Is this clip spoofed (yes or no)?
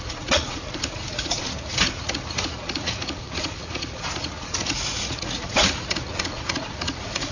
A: yes